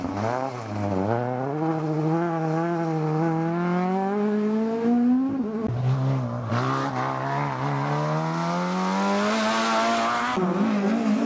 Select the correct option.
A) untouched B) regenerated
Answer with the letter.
A